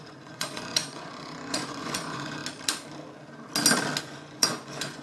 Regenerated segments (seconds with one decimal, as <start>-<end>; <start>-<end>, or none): 0.0-2.4; 4.0-5.0